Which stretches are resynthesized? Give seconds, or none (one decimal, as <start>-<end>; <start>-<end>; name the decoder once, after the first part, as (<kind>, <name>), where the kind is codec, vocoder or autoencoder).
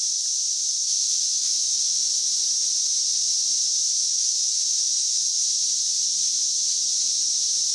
0.8-2.3 (autoencoder, DAC-VAE); 4.0-5.4